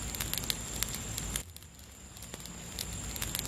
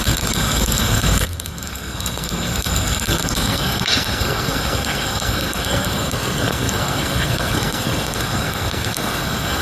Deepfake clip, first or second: second